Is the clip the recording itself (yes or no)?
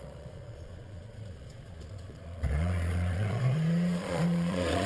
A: no